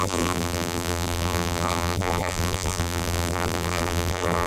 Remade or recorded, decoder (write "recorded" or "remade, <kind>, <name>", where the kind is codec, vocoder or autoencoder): remade, vocoder, BigVGAN v2